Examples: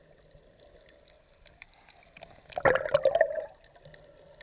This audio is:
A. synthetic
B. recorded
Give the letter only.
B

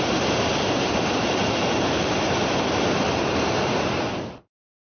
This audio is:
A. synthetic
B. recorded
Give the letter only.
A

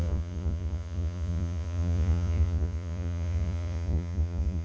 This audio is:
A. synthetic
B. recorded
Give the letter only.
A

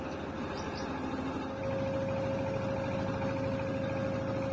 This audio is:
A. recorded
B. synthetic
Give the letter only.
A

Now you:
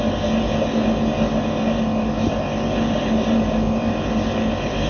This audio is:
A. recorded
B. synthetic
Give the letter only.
A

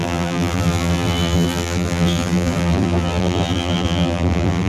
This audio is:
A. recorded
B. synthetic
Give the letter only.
B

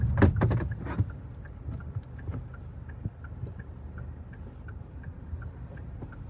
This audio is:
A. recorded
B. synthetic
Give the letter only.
A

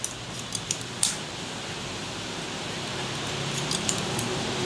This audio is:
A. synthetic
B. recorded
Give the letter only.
A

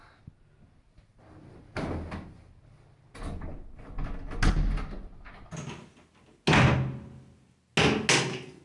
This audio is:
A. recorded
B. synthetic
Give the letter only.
A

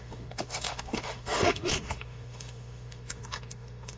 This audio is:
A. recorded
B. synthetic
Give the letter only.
B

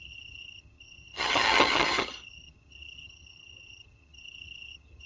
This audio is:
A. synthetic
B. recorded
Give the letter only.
A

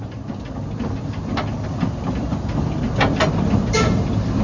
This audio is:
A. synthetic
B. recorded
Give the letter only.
B